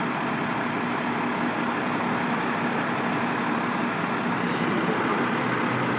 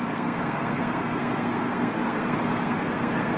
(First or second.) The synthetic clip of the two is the second